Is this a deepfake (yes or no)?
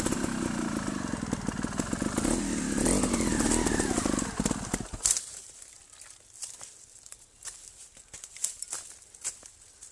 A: no